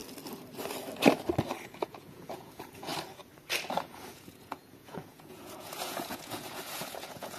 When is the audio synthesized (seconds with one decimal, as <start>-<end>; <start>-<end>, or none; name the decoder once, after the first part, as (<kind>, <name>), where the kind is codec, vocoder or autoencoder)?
1.7-2.9 (vocoder, Vocos); 3.8-7.4